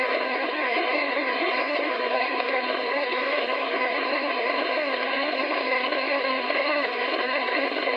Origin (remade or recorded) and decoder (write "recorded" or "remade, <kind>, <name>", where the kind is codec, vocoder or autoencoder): remade, codec, SNAC